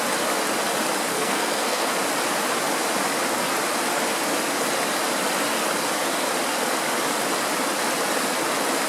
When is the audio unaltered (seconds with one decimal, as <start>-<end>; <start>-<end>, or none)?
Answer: 0.0-1.1; 1.9-8.9